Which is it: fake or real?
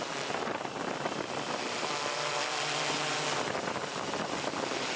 fake